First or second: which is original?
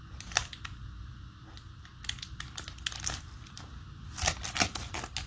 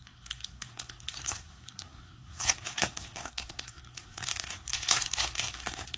first